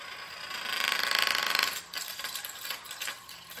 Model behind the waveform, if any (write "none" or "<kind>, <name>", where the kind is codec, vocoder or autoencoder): none